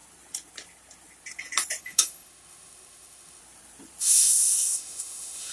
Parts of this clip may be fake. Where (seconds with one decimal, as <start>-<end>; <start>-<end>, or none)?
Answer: 1.8-3.4; 4.0-5.5